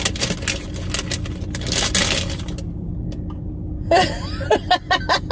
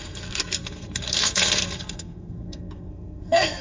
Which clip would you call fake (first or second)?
second